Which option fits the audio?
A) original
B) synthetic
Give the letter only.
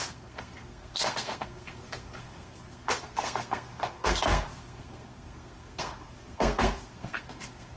B